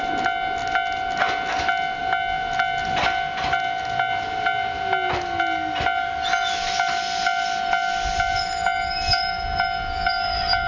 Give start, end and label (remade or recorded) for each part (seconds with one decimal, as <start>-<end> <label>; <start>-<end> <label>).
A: 0.0-10.7 recorded